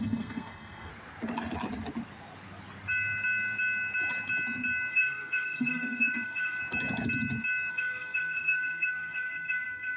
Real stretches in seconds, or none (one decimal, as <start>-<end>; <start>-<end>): 0.9-4.9; 6.6-7.7